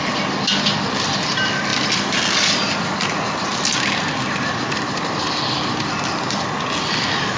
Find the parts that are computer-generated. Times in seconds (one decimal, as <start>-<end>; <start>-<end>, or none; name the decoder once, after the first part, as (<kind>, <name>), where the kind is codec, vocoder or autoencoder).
none